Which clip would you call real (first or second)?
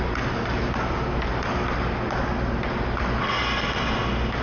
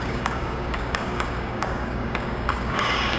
first